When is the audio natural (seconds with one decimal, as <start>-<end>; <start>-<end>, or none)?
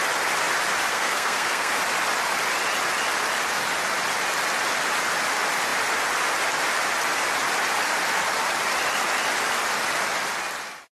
0.0-0.9; 1.8-11.0